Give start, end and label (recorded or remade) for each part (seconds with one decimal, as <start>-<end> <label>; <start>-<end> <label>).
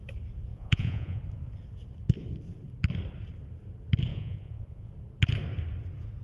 0.0-0.5 recorded; 0.5-1.2 remade; 1.2-4.1 recorded; 4.1-4.9 remade; 4.9-6.2 recorded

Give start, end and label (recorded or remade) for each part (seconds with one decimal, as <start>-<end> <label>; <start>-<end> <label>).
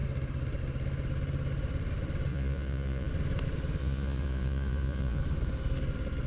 0.0-2.3 recorded; 2.3-3.1 remade; 3.1-3.8 recorded; 3.8-5.2 remade; 5.2-6.3 recorded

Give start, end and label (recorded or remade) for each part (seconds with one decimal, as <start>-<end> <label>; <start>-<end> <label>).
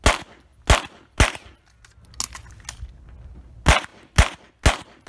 0.0-5.1 recorded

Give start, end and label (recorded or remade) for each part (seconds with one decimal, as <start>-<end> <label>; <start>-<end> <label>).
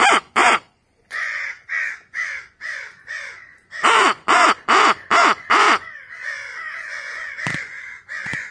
0.0-8.5 remade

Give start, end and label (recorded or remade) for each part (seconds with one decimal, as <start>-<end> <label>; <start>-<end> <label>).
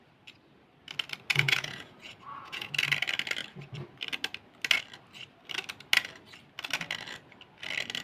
0.0-1.3 recorded; 1.3-2.7 remade; 2.7-8.0 recorded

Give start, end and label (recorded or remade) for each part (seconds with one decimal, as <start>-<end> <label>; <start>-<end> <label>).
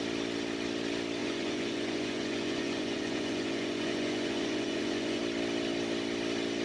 0.0-1.2 recorded; 1.2-5.2 remade; 5.2-6.6 recorded